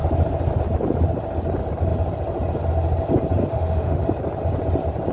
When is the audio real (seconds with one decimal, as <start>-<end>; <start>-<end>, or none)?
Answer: 0.0-3.4; 4.0-5.1